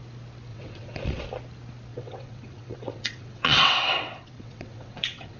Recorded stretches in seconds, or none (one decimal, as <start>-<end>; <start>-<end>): 0.0-0.5; 1.2-1.9